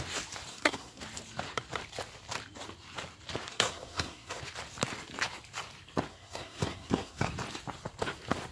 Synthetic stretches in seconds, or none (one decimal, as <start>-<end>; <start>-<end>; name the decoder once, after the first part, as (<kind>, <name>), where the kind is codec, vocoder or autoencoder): 0.5-1.0 (codec, SNAC); 3.5-4.4; 6.1-7.3